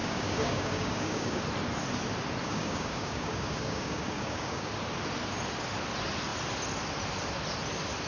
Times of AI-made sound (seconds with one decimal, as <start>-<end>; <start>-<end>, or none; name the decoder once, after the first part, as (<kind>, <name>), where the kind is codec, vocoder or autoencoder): 0.0-1.4 (codec, DAC); 2.4-4.7